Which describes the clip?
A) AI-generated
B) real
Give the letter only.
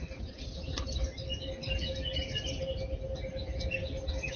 B